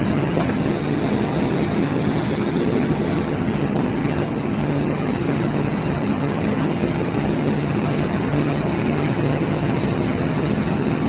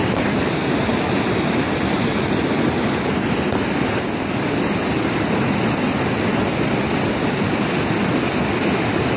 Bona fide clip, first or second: second